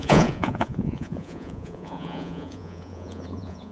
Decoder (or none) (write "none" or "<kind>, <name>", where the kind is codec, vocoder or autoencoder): vocoder, Vocos